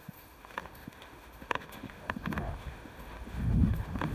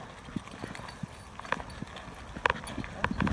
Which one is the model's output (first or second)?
first